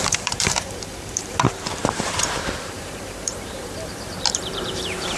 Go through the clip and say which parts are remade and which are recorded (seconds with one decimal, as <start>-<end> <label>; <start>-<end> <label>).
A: 0.0-5.2 remade